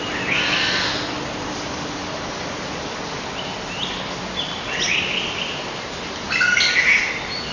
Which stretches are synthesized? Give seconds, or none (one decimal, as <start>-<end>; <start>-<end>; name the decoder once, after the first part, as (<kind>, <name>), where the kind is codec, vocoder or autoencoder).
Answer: none